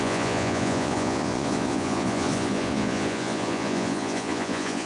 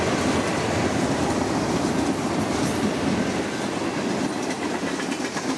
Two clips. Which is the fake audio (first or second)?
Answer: first